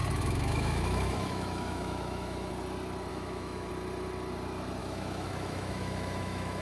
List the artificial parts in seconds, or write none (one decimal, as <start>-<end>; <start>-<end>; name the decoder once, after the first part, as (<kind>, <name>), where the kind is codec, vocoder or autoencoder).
0.0-2.5 (autoencoder, DAC-VAE); 3.1-3.7; 4.8-6.6